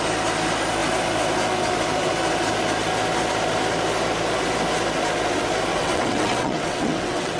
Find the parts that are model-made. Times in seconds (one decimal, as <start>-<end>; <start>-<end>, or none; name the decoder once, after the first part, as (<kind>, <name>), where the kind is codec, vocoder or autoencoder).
5.7-7.4 (vocoder, WaveNeXt)